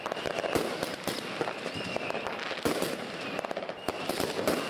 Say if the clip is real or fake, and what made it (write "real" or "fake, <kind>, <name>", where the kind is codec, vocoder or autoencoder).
fake, vocoder, BigVGAN v2